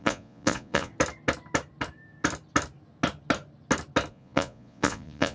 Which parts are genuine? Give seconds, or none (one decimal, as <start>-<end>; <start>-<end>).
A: 0.9-4.1